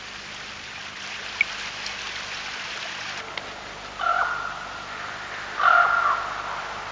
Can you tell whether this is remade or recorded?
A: recorded